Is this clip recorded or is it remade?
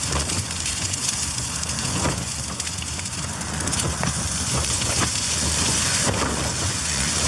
remade